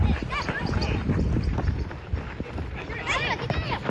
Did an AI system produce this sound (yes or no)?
yes